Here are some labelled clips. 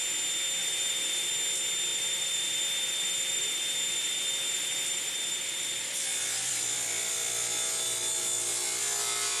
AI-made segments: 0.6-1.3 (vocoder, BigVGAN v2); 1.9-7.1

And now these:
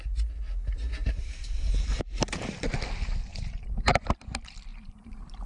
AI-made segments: 1.0-2.7 (vocoder, BigVGAN v2); 3.3-3.9; 4.7-5.5

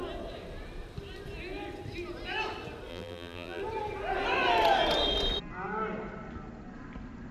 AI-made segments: 2.9-3.6 (vocoder, BigVGAN v2)

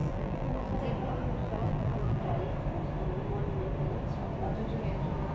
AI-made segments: 0.0-0.8 (vocoder, BigVGAN v2); 1.4-2.2

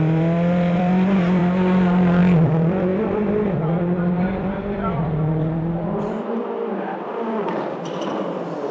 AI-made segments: 0.0-1.4 (vocoder, BigVGAN v2); 2.2-8.7

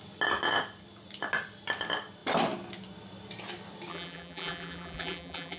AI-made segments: 3.9-5.6 (vocoder, BigVGAN v2)

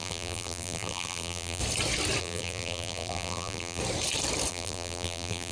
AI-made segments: 0.0-1.6 (vocoder, BigVGAN v2); 2.2-3.8; 4.5-5.5

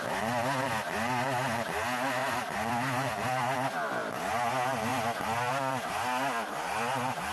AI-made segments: 2.2-3.4 (vocoder, BigVGAN v2)